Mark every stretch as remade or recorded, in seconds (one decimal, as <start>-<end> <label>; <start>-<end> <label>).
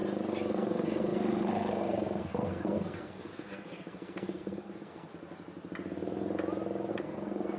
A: 0.0-0.5 recorded; 0.5-5.1 remade; 5.1-6.9 recorded; 6.9-7.6 remade